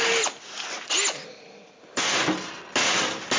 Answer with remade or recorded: recorded